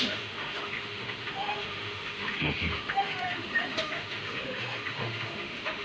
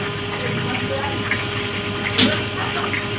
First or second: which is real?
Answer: second